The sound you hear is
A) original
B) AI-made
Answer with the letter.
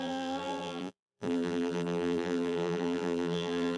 B